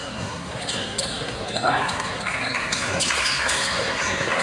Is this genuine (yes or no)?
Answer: no